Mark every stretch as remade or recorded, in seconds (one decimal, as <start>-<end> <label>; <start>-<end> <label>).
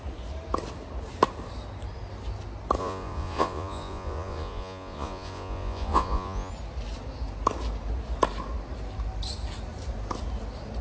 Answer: 0.0-2.8 recorded; 2.8-6.5 remade; 6.5-10.8 recorded